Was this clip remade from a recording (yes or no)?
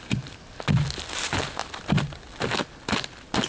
no